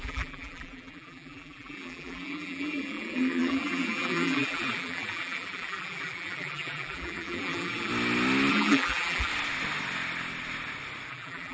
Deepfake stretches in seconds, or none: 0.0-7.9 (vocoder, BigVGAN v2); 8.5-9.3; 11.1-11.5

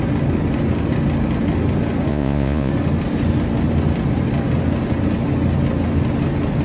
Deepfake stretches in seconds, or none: 2.1-2.7 (vocoder, Vocos)

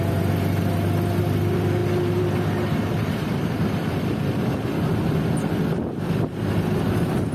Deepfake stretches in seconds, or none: none

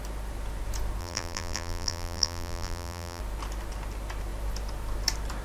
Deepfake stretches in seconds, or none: 1.0-3.2 (vocoder, BigVGAN v2)

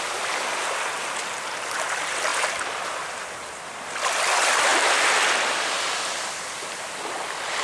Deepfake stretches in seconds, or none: none